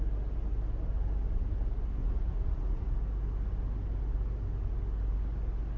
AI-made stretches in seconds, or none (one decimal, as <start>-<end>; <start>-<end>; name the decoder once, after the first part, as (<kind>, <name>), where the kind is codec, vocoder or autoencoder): 2.0-2.9 (vocoder, Vocos)